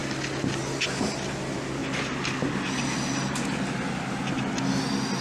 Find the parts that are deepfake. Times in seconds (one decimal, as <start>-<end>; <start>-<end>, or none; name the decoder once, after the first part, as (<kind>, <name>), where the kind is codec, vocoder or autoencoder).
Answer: none